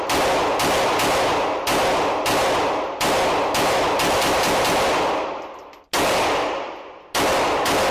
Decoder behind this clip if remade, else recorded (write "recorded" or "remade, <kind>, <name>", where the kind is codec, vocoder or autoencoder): recorded